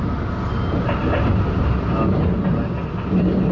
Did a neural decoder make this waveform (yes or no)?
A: no